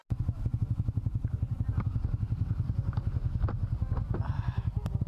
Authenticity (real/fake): real